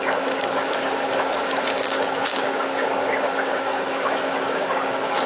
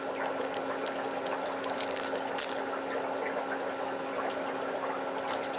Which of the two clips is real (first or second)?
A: second